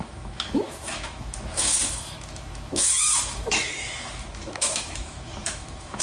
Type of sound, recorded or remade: remade